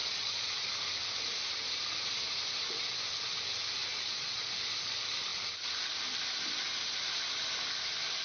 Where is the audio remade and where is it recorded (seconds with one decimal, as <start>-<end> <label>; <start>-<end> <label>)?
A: 0.0-0.6 remade; 0.6-3.9 recorded; 3.9-4.5 remade; 4.5-8.2 recorded